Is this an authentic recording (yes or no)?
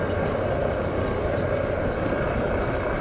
yes